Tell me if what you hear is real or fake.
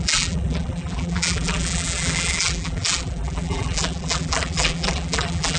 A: fake